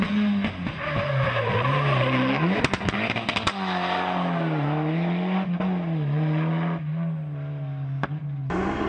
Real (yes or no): yes